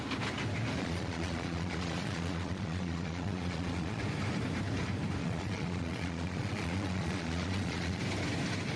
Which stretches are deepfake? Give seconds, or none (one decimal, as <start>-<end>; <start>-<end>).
0.8-4.0; 5.2-8.0